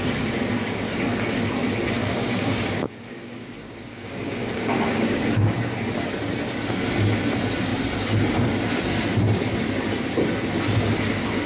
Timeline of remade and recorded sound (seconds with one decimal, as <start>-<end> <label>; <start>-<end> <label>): 0.0-2.0 recorded; 2.0-5.2 remade; 5.2-11.5 recorded